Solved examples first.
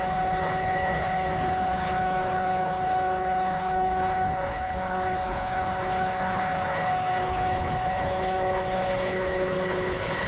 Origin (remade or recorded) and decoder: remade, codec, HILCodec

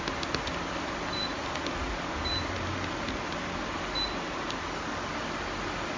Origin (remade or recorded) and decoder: recorded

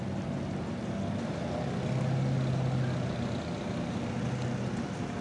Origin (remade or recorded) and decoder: recorded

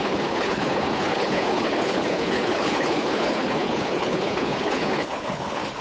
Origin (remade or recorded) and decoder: remade, codec, HILCodec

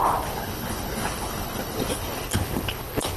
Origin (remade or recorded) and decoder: remade, codec, HILCodec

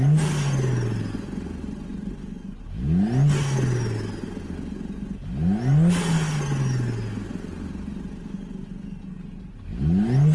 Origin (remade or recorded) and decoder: recorded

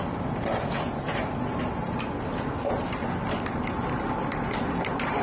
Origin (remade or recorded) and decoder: recorded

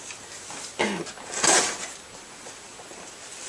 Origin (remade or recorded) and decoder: recorded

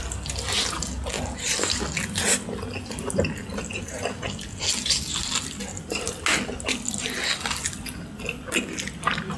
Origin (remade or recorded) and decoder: recorded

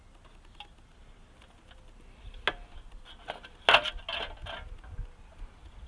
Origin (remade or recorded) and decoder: recorded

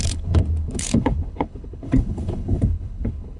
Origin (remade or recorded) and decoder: remade, codec, HILCodec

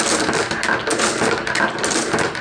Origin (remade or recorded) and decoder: recorded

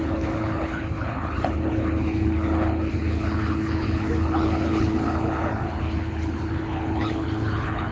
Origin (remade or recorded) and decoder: remade, codec, HILCodec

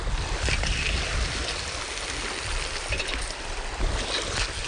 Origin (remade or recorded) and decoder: recorded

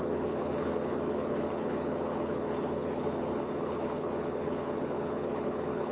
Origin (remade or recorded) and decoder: remade, codec, HILCodec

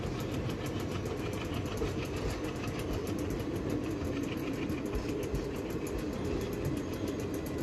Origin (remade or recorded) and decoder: recorded